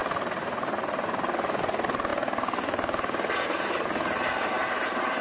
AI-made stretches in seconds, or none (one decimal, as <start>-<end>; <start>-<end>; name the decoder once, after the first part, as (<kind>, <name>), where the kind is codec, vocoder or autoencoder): none